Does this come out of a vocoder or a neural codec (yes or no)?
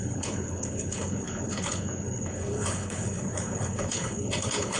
yes